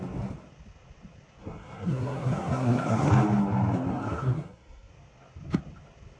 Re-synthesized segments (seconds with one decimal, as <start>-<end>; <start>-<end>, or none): 1.4-3.1; 3.9-4.9